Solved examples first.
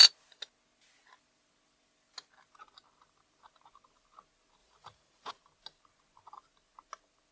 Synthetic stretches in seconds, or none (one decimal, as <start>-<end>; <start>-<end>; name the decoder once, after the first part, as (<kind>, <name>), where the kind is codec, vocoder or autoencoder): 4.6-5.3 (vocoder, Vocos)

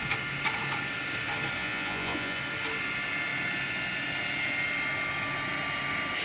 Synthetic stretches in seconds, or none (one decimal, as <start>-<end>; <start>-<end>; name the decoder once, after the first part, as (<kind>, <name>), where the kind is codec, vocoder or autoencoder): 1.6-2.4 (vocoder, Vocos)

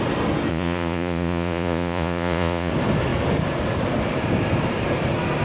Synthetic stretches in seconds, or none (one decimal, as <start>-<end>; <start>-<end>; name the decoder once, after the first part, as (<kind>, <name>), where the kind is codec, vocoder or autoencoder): 0.5-2.7 (vocoder, Vocos)

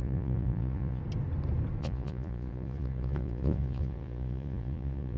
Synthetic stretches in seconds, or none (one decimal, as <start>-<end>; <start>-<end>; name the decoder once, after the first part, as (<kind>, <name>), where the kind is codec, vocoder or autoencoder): 0.0-1.0 (vocoder, Vocos); 1.8-5.2

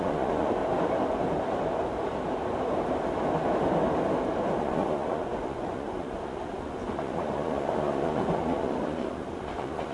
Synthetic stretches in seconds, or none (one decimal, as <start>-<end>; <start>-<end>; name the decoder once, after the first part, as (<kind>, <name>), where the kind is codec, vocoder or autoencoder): 0.0-0.6 (vocoder, Vocos); 4.6-9.9